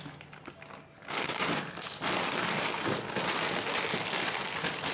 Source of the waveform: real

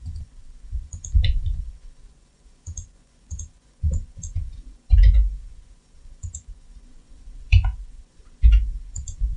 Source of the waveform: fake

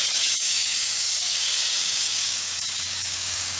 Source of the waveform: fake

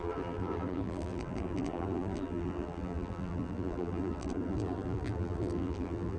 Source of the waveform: fake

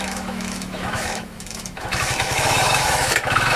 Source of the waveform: fake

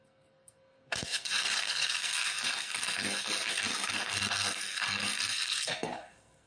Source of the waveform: fake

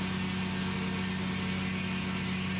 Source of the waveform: real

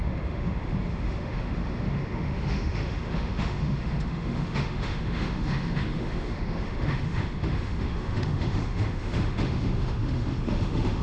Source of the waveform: fake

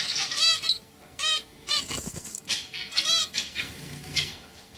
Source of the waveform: fake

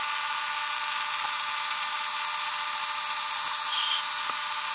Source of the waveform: real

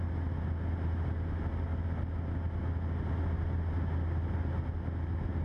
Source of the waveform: real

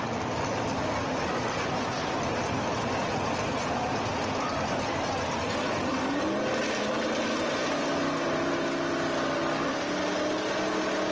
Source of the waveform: real